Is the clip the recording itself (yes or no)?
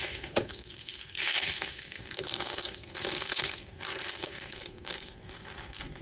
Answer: no